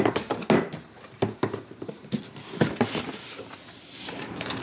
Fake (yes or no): no